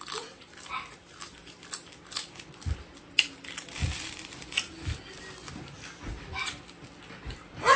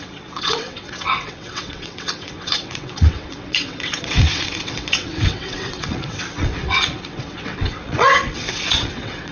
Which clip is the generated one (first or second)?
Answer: second